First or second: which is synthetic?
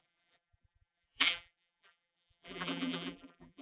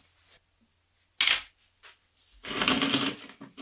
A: first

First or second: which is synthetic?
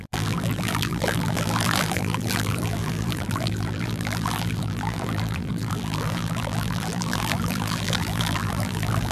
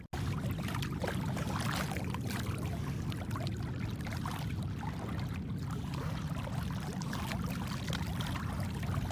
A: first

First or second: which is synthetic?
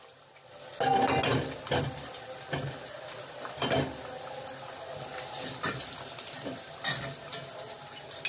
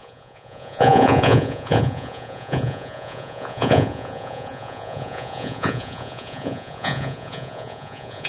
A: second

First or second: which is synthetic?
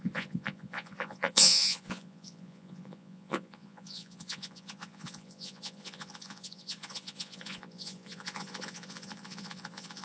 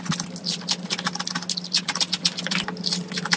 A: first